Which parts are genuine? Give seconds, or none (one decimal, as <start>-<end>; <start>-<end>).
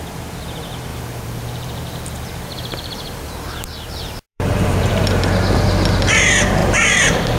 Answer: 0.0-0.9; 5.2-6.6